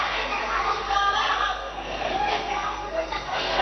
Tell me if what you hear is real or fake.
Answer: fake